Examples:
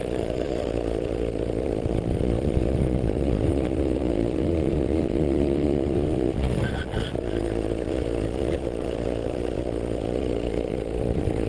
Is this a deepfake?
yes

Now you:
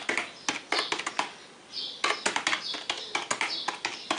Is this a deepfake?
no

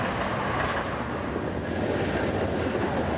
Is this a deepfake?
no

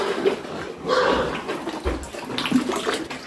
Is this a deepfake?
no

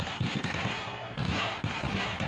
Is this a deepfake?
yes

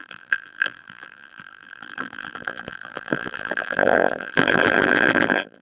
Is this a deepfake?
yes